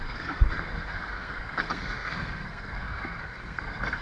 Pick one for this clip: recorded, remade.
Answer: remade